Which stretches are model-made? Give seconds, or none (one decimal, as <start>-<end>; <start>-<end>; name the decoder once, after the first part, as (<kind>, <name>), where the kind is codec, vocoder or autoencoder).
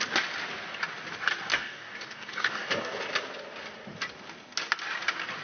1.5-3.0 (codec, DAC)